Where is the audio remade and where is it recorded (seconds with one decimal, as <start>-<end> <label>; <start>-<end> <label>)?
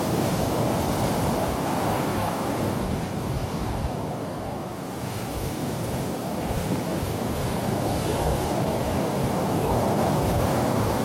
0.0-0.8 remade; 0.8-1.4 recorded; 1.4-11.0 remade